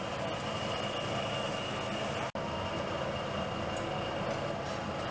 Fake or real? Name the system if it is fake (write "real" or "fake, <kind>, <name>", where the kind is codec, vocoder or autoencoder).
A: real